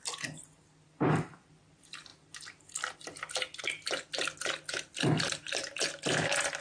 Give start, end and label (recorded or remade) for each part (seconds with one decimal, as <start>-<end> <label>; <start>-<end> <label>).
0.0-6.6 recorded